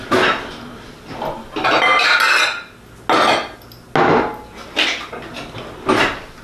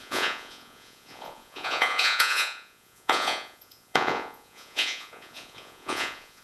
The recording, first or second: first